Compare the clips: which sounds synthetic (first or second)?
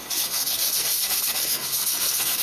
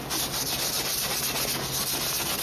first